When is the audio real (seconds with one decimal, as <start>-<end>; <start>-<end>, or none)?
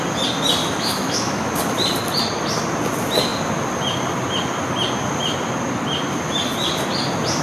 0.0-0.6; 1.5-7.4